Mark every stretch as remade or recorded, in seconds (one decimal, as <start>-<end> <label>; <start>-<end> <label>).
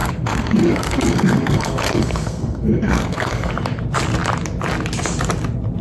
0.0-3.5 remade; 3.5-5.8 recorded